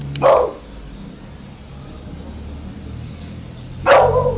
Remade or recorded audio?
recorded